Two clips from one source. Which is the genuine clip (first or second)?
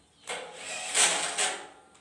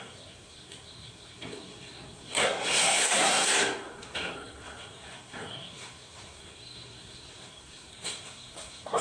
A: first